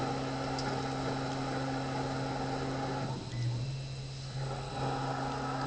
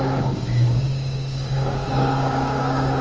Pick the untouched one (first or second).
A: first